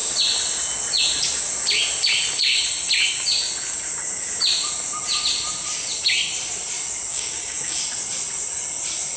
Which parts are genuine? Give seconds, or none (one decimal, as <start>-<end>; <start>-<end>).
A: 0.0-7.1; 7.8-9.2